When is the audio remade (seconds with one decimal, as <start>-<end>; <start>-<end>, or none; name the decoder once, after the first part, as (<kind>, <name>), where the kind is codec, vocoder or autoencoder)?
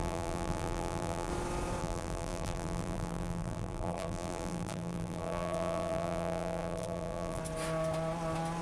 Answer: 0.0-1.3 (vocoder, BigVGAN v2); 1.8-7.4